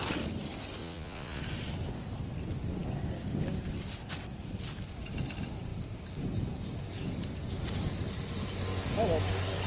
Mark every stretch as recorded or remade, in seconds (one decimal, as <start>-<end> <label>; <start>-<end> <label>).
0.0-0.8 recorded; 0.8-1.4 remade; 1.4-9.7 recorded

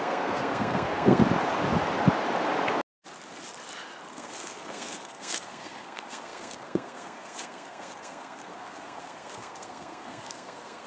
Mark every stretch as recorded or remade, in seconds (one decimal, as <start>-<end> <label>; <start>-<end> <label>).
0.0-1.2 remade; 1.2-4.1 recorded; 4.1-10.9 remade